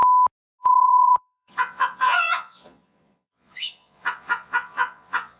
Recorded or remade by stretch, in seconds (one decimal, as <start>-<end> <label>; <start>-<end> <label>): 0.0-0.6 recorded; 0.6-5.4 remade

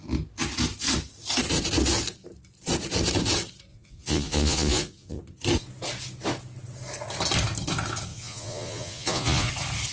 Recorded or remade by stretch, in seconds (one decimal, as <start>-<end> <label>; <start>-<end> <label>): 0.0-3.7 recorded; 3.7-5.2 remade; 5.2-8.1 recorded; 8.1-9.5 remade; 9.5-9.9 recorded

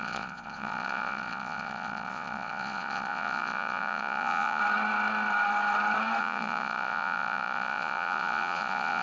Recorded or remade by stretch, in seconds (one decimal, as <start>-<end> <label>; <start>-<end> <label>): 0.0-4.6 remade; 4.6-6.2 recorded; 6.2-9.0 remade

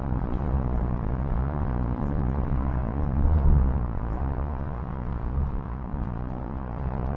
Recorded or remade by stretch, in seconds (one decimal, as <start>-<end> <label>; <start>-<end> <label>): 0.0-7.2 remade

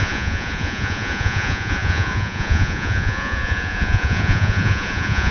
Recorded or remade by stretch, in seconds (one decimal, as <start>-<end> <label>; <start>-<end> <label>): 0.0-5.3 remade

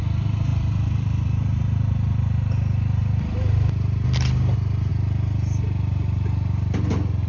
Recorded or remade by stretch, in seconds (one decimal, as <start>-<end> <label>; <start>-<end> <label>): 0.0-7.3 recorded

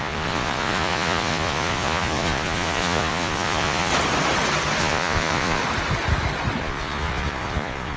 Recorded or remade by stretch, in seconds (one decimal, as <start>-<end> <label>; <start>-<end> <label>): 0.0-3.9 remade; 3.9-4.8 recorded; 4.8-5.6 remade; 5.6-6.6 recorded; 6.6-8.0 remade

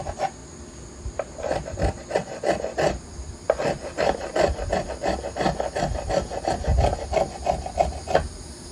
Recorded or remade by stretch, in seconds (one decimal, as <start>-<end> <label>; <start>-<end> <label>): 0.0-8.7 recorded